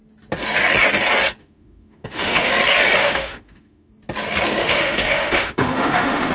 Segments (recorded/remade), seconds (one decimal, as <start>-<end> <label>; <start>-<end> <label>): 0.0-1.4 recorded; 1.4-2.5 remade; 2.5-3.0 recorded; 3.0-3.9 remade; 3.9-4.6 recorded; 4.6-6.3 remade